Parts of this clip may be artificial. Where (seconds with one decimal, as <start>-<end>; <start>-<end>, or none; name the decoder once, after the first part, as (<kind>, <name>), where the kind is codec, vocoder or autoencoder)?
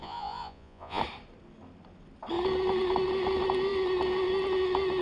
0.0-1.0 (vocoder, Vocos)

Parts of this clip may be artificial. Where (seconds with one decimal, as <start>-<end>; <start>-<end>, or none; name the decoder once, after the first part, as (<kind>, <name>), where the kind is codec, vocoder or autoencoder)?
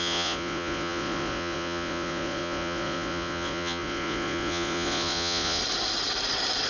0.0-5.6 (vocoder, Vocos)